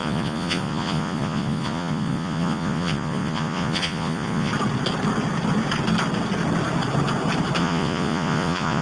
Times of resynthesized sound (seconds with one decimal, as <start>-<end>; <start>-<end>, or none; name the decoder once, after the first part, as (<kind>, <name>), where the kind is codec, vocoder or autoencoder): 0.0-4.5 (vocoder, Vocos); 7.6-8.8